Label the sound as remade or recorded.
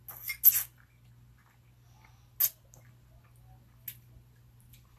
recorded